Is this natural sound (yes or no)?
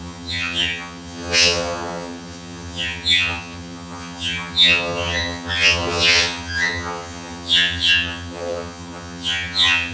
no